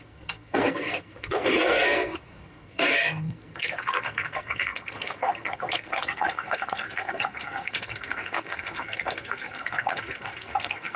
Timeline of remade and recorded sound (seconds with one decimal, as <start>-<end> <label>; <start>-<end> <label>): 0.0-11.0 remade